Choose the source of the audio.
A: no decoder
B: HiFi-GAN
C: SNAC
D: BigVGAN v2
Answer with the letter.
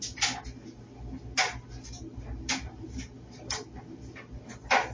A